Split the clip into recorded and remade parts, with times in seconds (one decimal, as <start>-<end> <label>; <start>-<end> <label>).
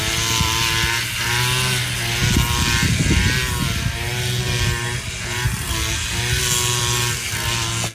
0.0-7.9 recorded